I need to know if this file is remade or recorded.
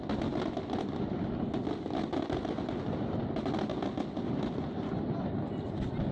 recorded